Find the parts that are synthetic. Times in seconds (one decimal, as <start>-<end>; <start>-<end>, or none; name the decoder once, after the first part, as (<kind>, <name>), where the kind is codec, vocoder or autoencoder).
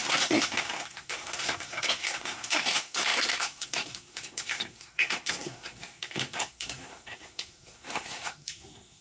0.0-9.0 (codec, SNAC)